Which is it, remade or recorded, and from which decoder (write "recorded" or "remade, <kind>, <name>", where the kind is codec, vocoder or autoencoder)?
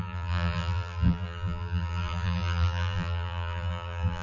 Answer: remade, vocoder, BigVGAN v2